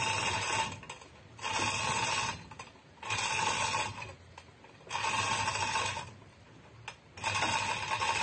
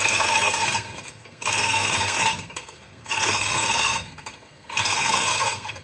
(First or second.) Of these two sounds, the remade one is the second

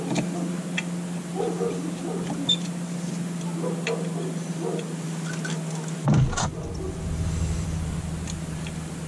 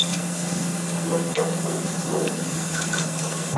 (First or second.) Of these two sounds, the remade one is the second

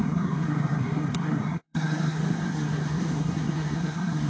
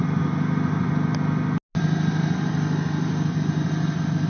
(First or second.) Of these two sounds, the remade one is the first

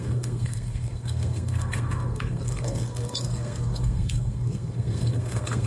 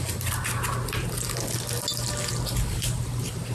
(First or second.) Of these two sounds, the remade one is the first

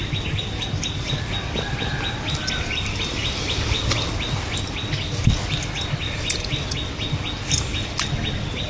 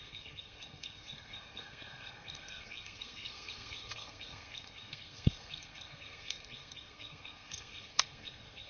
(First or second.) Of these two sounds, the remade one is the second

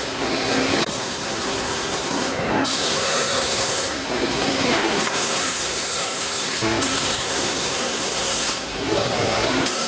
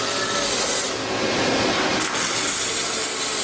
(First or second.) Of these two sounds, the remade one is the first